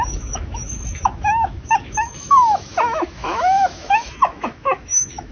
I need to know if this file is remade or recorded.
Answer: remade